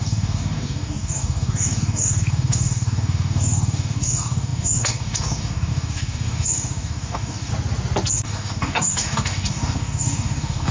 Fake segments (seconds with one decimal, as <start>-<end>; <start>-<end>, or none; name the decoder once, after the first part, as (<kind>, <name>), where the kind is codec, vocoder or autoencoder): 0.0-7.5 (codec, DAC); 8.1-10.7